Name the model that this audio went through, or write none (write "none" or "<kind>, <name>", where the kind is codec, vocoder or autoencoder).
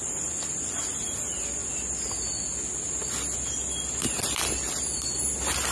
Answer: none